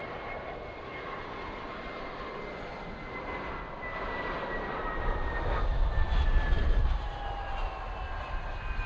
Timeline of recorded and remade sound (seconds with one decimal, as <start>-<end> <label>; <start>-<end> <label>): 0.0-1.6 remade; 1.6-8.9 recorded